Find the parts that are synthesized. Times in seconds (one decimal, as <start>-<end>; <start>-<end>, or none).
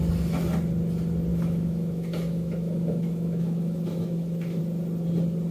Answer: 1.3-4.6